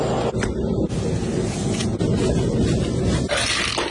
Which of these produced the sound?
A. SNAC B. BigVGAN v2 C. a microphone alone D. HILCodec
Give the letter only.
C